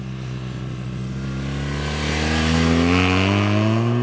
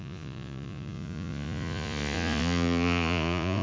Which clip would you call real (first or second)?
first